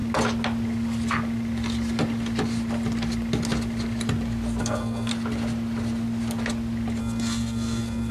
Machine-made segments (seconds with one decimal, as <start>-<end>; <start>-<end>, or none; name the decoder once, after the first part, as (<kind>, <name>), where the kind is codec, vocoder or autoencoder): 4.6-5.1 (codec, SNAC); 7.0-8.1